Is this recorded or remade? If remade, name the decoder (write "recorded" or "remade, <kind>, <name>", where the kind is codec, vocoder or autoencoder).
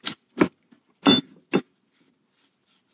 recorded